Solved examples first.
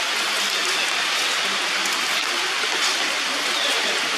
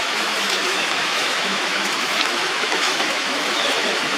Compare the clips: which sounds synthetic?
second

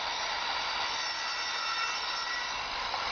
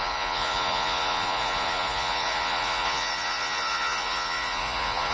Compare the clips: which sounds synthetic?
second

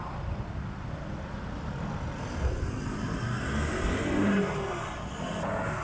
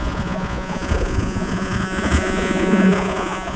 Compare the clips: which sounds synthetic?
second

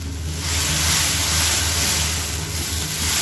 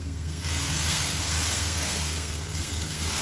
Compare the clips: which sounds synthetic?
second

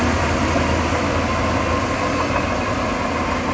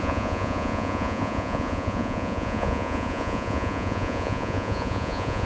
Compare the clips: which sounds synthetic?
second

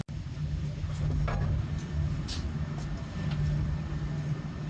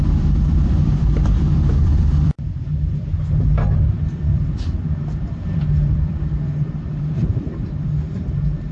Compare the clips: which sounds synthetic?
second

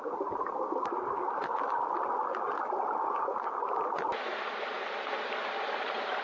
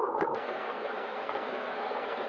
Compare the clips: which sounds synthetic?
second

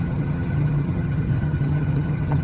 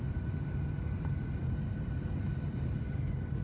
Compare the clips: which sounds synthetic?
first